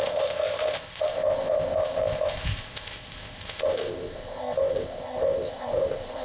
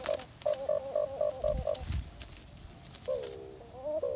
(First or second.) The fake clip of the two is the first